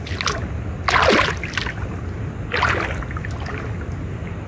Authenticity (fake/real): real